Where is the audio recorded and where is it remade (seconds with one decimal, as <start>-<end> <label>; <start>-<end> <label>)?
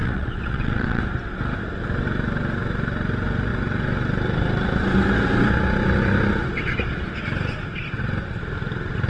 0.0-1.0 remade; 1.0-9.1 recorded